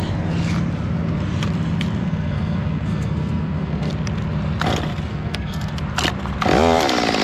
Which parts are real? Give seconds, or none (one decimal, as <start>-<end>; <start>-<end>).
0.0-2.0; 3.9-5.1; 5.7-7.2